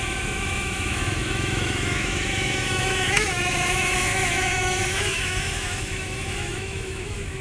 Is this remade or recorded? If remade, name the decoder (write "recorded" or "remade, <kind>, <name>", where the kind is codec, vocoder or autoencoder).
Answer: remade, autoencoder, DAC-VAE